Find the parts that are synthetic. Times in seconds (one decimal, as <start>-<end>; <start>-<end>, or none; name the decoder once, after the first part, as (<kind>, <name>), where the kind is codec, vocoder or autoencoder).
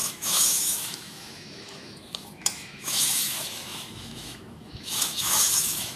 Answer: 0.0-6.0 (autoencoder, DAC-VAE)